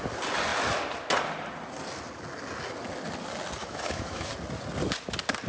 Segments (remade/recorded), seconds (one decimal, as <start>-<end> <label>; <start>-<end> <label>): 0.0-3.6 recorded; 3.6-4.3 remade; 4.3-5.5 recorded